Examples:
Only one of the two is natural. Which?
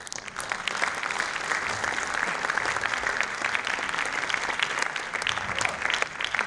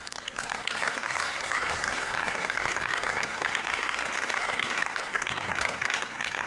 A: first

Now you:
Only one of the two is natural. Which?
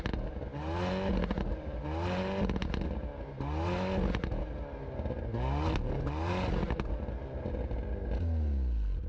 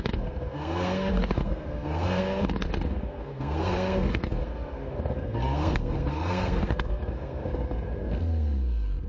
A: first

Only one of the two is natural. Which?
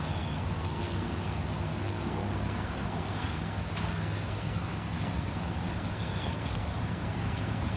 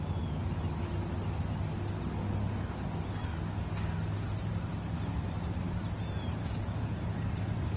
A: second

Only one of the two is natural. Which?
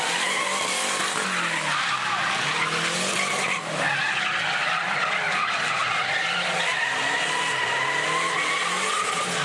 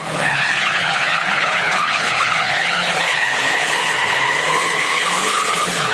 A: first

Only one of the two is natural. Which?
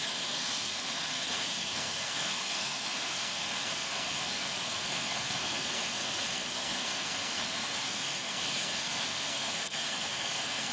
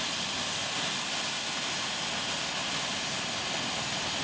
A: second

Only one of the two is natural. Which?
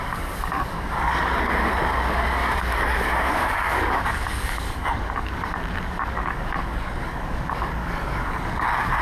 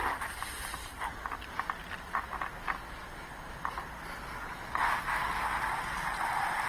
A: second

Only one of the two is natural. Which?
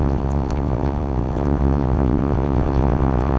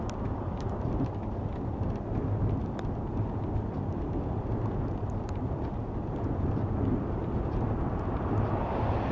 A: second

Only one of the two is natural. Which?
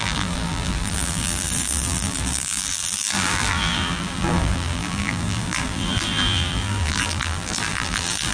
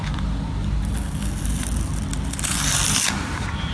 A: second